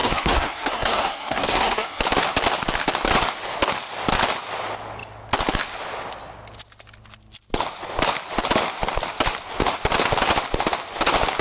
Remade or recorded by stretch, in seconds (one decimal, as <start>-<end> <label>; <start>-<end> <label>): 0.0-2.0 remade; 2.0-11.4 recorded